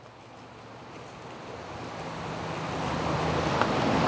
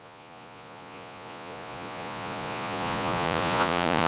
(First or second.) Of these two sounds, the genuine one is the first